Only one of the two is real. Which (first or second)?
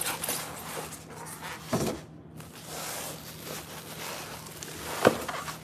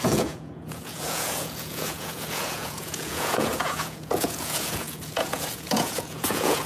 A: first